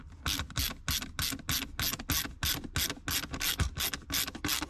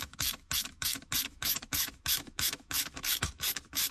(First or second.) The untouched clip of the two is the first